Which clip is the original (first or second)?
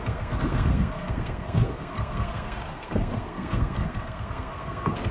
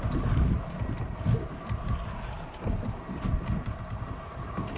second